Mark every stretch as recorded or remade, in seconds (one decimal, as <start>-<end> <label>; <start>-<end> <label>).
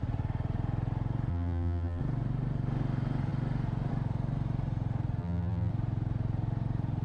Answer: 0.0-1.3 recorded; 1.3-2.0 remade; 2.0-5.2 recorded; 5.2-5.7 remade; 5.7-7.0 recorded